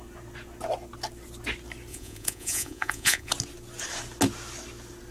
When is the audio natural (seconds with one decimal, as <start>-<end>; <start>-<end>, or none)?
0.0-1.9; 3.3-5.1